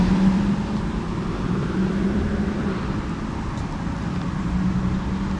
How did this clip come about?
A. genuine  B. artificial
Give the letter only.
B